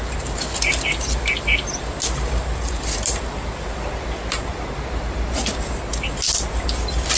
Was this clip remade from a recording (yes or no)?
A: no